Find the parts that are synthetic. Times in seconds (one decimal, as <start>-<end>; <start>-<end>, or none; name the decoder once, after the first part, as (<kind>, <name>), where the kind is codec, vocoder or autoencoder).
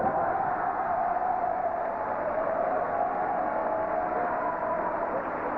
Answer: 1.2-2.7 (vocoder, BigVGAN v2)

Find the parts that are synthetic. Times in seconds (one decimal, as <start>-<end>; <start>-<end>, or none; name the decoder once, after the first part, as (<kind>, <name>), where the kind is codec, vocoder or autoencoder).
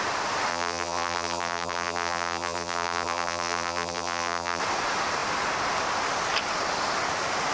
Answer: 0.5-4.6 (vocoder, BigVGAN v2)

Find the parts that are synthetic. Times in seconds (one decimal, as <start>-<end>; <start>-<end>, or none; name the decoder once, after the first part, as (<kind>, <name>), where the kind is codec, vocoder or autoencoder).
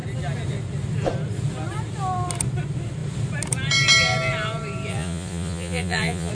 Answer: 4.9-6.3 (vocoder, Vocos)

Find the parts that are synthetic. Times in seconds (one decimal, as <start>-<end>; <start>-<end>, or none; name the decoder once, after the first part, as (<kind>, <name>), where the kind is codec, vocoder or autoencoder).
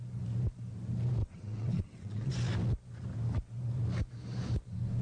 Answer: 1.2-2.3 (vocoder, WaveNeXt)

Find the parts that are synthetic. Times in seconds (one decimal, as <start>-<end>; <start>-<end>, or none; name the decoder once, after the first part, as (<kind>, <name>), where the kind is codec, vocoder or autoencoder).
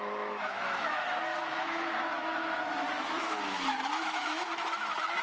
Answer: 0.0-5.2 (autoencoder, DAC-VAE)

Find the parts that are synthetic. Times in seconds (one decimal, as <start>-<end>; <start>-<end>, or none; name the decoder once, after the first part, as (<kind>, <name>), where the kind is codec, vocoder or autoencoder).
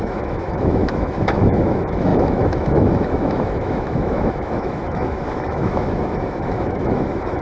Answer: 0.0-7.4 (autoencoder, DAC-VAE)